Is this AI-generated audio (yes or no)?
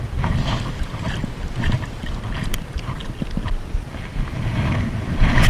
no